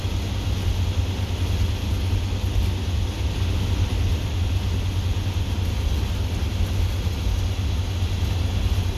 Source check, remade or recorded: recorded